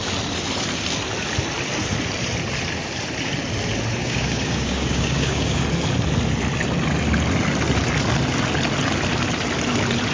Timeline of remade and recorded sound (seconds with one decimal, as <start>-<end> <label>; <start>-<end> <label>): 0.0-4.0 recorded; 4.0-5.6 remade; 5.6-10.1 recorded